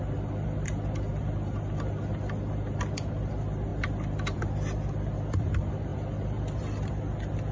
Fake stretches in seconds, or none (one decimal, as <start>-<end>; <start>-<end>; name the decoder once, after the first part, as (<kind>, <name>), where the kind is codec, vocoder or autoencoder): none